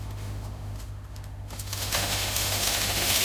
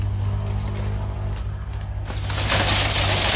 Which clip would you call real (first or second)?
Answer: second